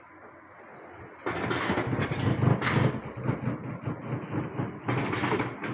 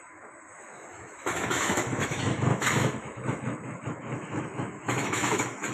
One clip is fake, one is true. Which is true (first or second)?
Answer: first